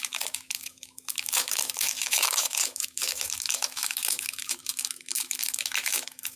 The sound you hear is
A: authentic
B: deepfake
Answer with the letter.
B